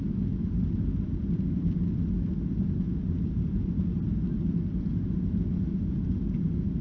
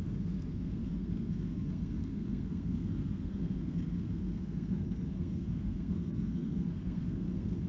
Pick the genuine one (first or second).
first